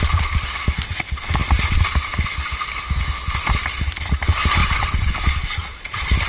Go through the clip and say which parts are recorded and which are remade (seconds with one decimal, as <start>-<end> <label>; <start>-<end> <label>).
0.0-4.6 recorded; 4.6-6.3 remade